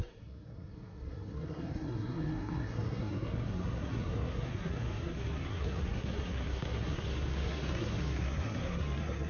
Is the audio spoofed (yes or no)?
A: yes